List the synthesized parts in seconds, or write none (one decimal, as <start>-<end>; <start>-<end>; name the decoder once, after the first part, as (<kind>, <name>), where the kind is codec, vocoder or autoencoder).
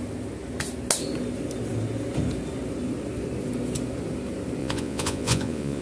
4.6-5.8 (vocoder, Vocos)